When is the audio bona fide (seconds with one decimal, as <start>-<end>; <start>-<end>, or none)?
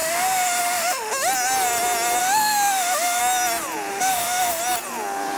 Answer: 1.1-2.2; 3.2-3.9; 4.6-5.4